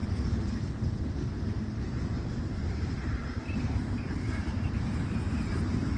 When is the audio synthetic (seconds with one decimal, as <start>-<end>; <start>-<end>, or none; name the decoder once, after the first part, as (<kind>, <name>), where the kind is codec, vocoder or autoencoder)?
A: 2.3-6.0 (vocoder, BigVGAN v2)